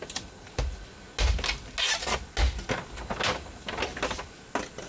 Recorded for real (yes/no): yes